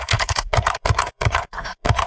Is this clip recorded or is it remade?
remade